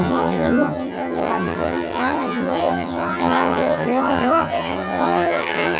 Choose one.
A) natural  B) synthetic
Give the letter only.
B